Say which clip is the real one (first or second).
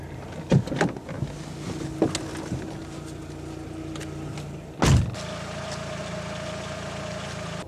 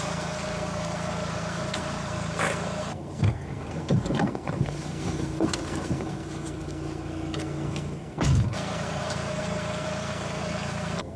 first